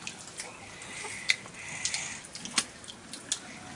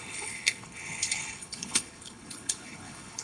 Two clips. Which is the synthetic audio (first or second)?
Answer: second